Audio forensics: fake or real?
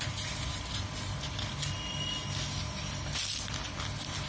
real